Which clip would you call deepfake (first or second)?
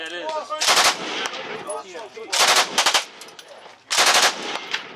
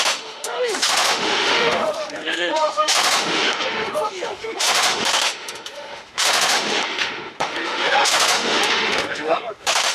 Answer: second